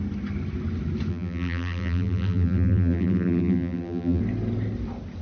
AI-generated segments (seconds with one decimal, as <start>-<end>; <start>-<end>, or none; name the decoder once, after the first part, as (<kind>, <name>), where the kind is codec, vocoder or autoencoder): 1.1-4.2 (vocoder, BigVGAN v2)